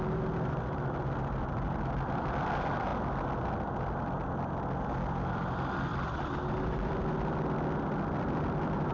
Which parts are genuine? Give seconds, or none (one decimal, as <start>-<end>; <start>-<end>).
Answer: 2.9-5.3